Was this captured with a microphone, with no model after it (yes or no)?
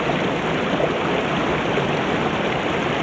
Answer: yes